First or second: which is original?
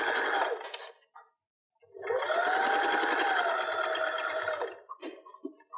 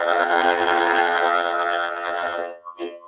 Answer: first